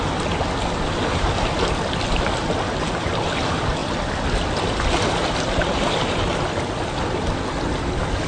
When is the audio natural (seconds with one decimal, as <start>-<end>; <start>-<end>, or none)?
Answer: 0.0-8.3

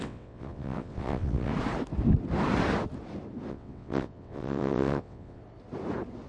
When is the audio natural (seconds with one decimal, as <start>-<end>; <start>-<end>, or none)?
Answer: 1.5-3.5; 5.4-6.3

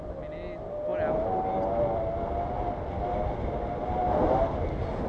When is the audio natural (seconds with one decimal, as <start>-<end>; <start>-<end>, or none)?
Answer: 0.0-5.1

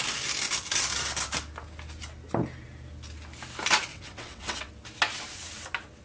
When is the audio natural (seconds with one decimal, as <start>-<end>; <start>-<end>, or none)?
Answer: 0.0-3.9; 4.7-6.0

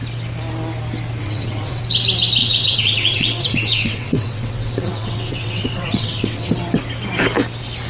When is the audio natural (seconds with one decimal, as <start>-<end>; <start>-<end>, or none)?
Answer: 0.0-1.2; 1.8-2.4; 6.5-7.9

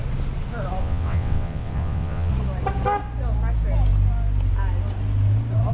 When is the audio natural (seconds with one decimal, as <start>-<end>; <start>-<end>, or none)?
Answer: 0.0-0.8; 2.3-5.7

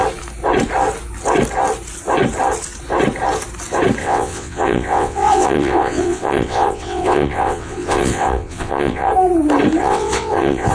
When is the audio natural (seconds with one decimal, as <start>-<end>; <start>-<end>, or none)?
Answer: 0.0-4.0; 9.1-9.8